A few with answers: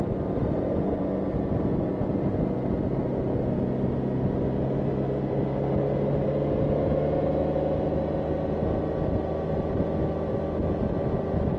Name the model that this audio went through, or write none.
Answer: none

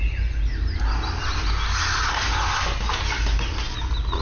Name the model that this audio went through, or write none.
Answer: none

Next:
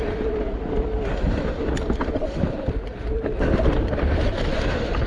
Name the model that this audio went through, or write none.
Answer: vocoder, BigVGAN v2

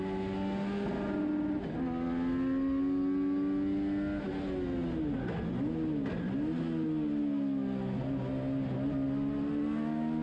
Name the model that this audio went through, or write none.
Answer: none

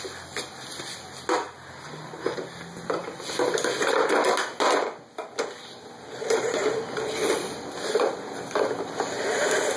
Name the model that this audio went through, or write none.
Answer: none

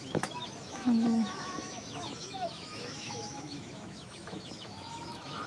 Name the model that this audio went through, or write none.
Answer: autoencoder, DAC-VAE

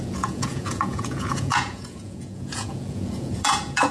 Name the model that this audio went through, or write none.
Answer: vocoder, Vocos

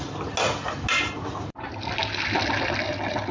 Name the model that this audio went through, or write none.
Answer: none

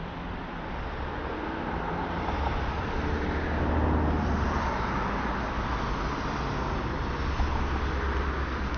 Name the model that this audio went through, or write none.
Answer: none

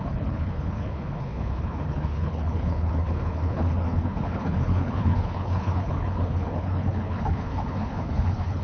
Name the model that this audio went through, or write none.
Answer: codec, HILCodec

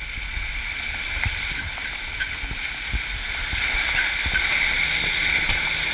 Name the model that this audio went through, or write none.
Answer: none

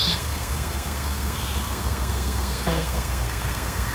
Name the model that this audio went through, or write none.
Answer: codec, SNAC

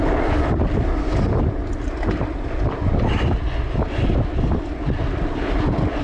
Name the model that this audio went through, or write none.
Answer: none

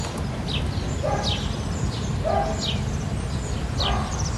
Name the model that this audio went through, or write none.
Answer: none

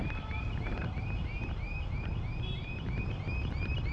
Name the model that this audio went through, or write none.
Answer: vocoder, BigVGAN v2